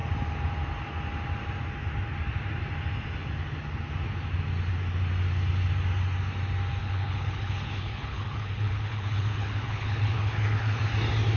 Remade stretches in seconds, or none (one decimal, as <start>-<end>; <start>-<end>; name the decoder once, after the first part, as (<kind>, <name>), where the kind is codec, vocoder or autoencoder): 6.8-10.8 (codec, HILCodec)